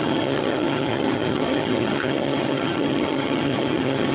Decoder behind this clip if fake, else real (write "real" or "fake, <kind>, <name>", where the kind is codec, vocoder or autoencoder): fake, vocoder, HiFi-GAN